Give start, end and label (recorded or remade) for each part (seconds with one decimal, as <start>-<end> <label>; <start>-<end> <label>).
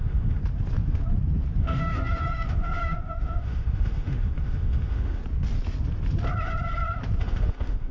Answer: 0.0-0.4 remade; 0.4-1.6 recorded; 1.6-5.2 remade; 5.2-7.2 recorded; 7.2-7.9 remade